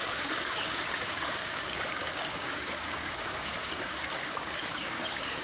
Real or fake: fake